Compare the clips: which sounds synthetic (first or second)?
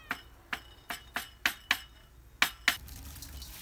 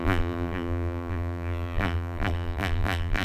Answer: second